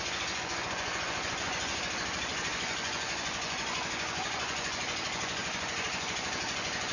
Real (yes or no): no